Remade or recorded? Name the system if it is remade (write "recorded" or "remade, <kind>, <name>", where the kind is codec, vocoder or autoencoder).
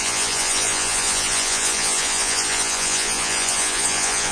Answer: remade, vocoder, Vocos